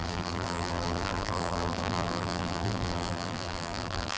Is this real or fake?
fake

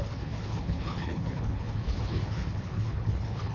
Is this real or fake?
fake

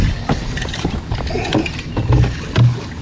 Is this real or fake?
real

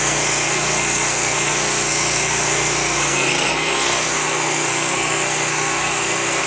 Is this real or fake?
fake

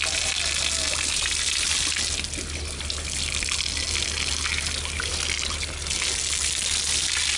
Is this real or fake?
real